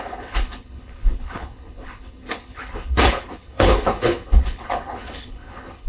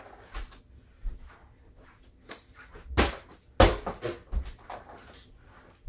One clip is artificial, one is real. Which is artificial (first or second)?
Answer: first